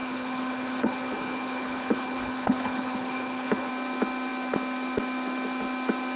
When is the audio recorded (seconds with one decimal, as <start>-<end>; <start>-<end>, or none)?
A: 3.7-6.2

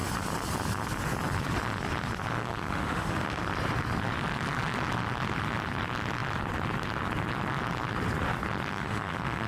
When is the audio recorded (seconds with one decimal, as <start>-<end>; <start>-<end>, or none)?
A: 0.0-2.4; 3.4-8.7

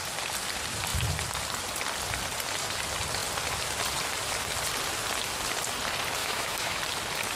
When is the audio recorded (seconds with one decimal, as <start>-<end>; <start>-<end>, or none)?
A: 0.0-6.2; 6.8-7.4

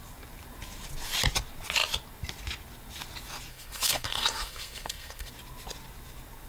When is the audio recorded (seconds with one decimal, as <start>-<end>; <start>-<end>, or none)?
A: 0.0-3.5; 5.3-6.5

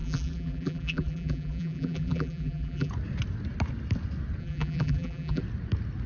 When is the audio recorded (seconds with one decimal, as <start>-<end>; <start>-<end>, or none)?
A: 2.9-4.4; 5.4-6.1

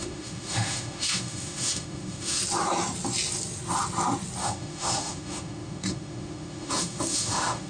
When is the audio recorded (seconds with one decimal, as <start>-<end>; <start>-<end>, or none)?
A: 2.4-4.4

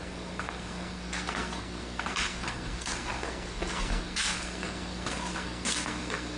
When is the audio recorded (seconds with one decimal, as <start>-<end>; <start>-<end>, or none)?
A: none